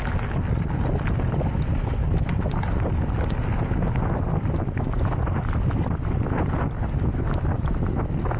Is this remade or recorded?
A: recorded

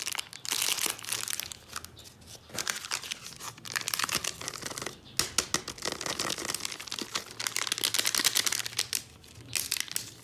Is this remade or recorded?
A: recorded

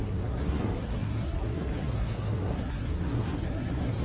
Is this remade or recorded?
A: remade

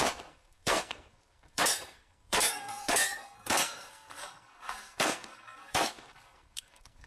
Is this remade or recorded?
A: remade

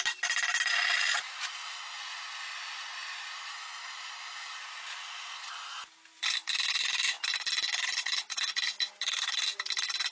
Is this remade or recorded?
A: recorded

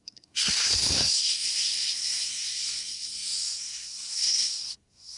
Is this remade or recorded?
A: remade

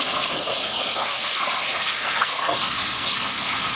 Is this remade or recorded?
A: remade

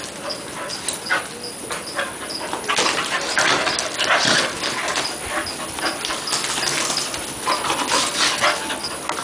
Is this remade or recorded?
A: recorded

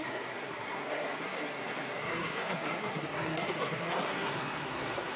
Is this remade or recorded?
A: remade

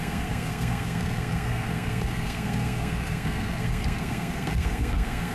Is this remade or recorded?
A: remade